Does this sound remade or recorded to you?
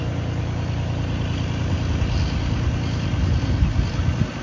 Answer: recorded